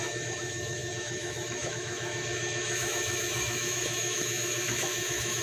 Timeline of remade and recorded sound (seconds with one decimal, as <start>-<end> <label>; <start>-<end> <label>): 0.0-5.4 remade